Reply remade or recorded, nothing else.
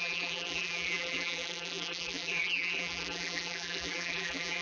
remade